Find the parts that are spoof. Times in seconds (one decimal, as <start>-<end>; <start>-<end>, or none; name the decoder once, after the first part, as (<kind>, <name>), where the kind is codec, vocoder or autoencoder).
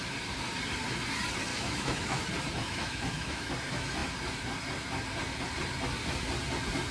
1.5-2.2 (autoencoder, DAC-VAE); 2.6-3.5